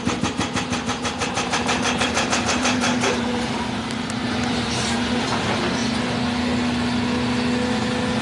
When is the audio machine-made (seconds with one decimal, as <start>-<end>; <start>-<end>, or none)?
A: 0.0-5.8